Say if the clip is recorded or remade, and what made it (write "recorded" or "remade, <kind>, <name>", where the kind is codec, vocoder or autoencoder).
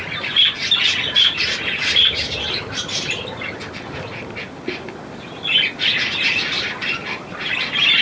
recorded